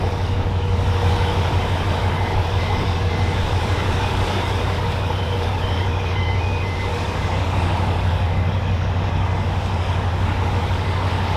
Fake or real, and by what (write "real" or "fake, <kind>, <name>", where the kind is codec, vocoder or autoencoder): fake, codec, DAC